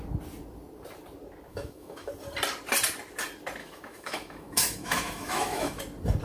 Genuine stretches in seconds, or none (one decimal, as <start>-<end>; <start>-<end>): 0.0-1.5; 2.1-3.6; 5.8-6.2